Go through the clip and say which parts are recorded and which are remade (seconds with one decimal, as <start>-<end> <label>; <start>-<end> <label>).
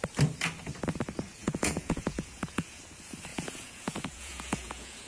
0.0-1.4 recorded; 1.4-2.8 remade; 2.8-3.3 recorded; 3.3-5.1 remade